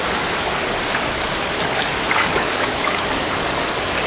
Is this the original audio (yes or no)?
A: no